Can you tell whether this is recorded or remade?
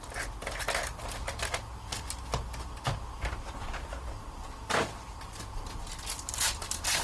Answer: recorded